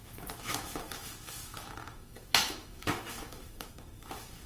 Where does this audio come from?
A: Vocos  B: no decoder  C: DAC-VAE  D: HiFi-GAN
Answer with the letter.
C